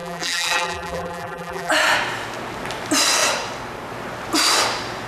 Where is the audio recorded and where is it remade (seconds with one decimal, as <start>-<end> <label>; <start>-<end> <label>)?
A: 0.0-1.7 remade; 1.7-5.1 recorded